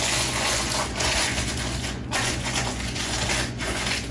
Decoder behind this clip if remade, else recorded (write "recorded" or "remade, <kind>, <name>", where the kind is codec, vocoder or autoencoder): remade, vocoder, Vocos